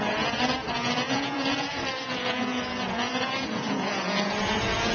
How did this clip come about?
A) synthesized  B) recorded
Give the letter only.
A